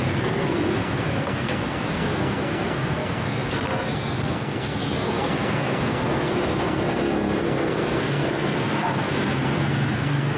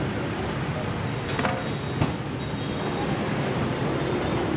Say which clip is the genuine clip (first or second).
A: second